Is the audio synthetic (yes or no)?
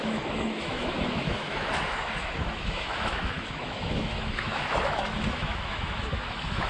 yes